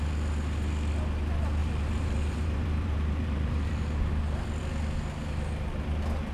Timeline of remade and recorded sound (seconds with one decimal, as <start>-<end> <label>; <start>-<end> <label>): 0.0-1.6 recorded; 1.6-4.1 remade; 4.1-6.3 recorded